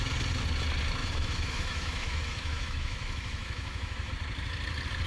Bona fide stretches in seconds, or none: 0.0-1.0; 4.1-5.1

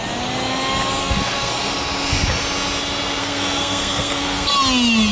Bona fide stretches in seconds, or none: 0.0-1.0; 1.5-3.2; 4.5-5.1

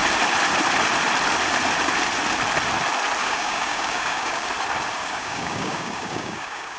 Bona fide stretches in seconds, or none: 0.0-3.2; 4.5-5.0

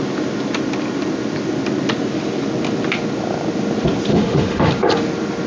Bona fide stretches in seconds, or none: 0.0-4.1; 4.7-5.5

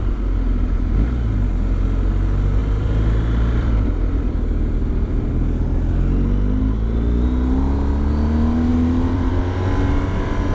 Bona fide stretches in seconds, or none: 0.0-2.6; 5.3-8.7; 9.3-10.5

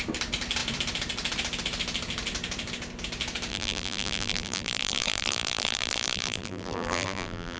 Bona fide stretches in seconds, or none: 0.0-3.5

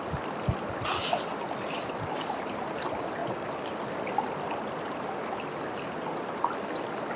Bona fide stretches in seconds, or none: 0.0-7.2

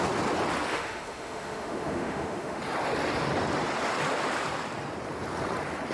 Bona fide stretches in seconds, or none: 0.0-0.7; 2.6-5.9